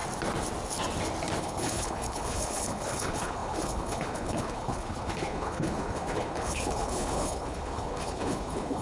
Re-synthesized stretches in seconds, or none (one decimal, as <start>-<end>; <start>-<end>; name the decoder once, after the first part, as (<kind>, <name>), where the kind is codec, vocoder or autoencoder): 1.4-8.8 (codec, HILCodec)